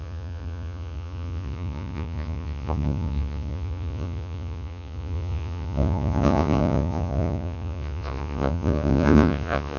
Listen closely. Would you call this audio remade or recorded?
remade